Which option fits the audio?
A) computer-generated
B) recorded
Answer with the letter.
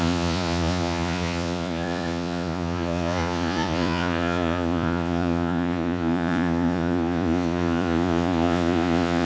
A